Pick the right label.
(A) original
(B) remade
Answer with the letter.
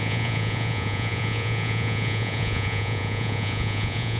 B